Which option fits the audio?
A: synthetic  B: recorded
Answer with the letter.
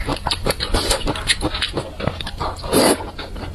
B